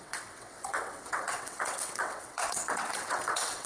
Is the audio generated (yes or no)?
yes